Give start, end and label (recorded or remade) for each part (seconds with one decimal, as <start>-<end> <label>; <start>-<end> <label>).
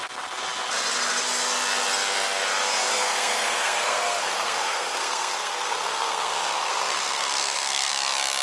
0.0-2.9 recorded; 2.9-7.9 remade; 7.9-8.4 recorded